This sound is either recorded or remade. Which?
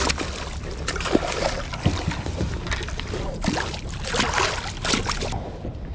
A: recorded